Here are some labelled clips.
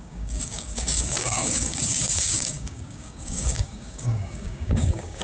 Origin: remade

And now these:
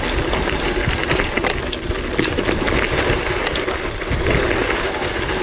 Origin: recorded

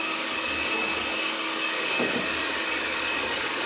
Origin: remade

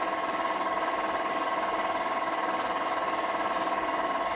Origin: remade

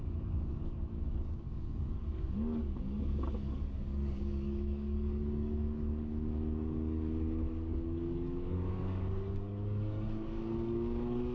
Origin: remade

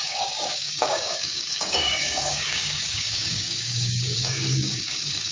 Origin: remade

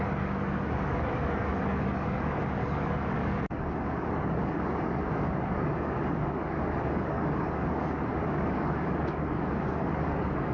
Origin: remade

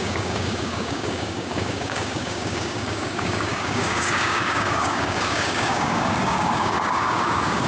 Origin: remade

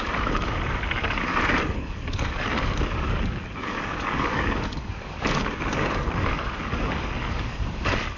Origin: remade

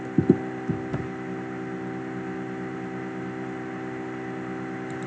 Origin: recorded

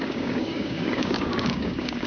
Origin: remade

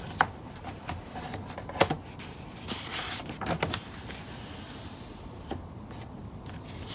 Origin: recorded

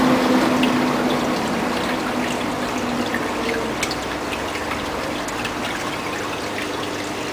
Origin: recorded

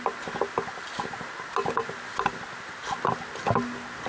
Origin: recorded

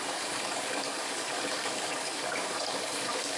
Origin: remade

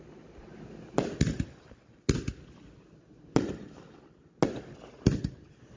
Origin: recorded